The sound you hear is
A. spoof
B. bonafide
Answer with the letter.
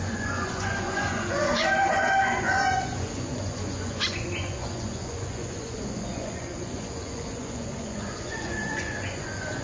A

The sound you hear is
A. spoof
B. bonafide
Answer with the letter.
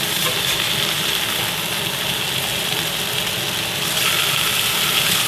B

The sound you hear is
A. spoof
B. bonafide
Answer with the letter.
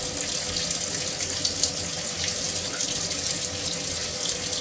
B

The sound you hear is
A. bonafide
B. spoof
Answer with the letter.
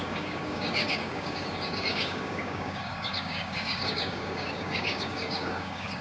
B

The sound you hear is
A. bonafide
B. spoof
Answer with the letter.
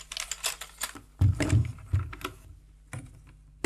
A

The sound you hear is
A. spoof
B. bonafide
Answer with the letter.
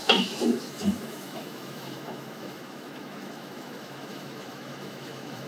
A